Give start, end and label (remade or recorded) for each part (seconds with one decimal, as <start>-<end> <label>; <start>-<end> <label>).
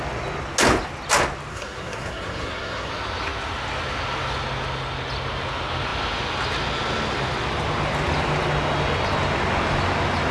0.0-1.5 recorded; 1.5-2.9 remade; 2.9-10.3 recorded